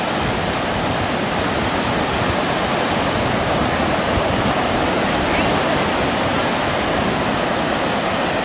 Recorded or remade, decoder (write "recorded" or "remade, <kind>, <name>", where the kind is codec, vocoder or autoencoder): recorded